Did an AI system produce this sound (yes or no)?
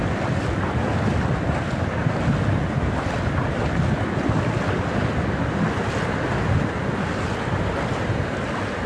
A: no